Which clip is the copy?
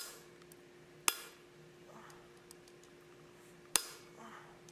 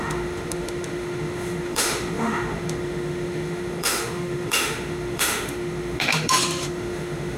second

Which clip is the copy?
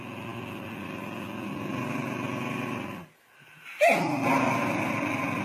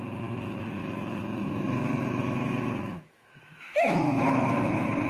second